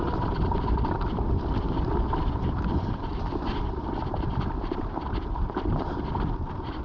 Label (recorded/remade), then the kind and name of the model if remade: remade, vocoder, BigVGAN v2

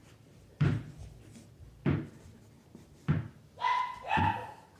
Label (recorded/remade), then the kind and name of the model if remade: recorded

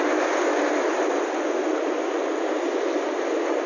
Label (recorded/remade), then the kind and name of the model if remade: recorded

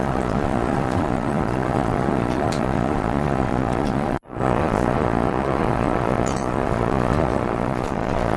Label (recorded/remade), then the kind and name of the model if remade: remade, vocoder, Vocos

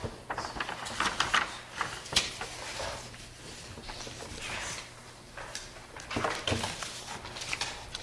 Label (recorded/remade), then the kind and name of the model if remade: recorded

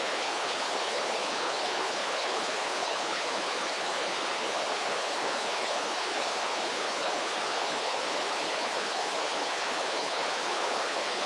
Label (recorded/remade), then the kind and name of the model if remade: remade, codec, HILCodec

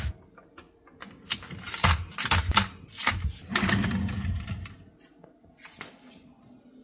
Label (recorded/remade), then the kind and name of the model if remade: recorded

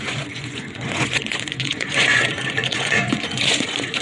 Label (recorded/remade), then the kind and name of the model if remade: remade, vocoder, Vocos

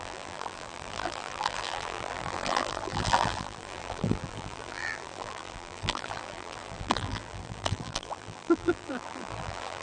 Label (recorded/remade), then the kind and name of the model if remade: remade, vocoder, BigVGAN v2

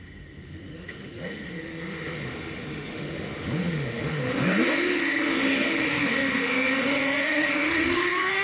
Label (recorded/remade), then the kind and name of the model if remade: remade, autoencoder, DAC-VAE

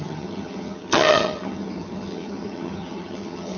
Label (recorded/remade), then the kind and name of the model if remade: remade, vocoder, HiFi-GAN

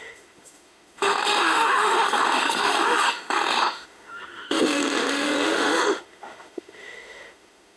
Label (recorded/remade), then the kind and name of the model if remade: remade, autoencoder, DAC-VAE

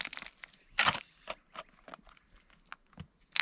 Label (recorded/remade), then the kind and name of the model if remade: recorded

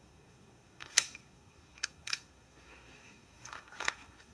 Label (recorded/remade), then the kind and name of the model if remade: remade, codec, SNAC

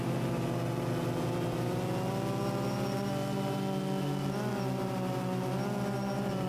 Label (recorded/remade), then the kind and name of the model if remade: recorded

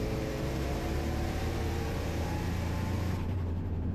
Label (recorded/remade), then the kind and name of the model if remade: remade, vocoder, BigVGAN v2